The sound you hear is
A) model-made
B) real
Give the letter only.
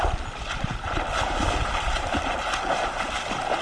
B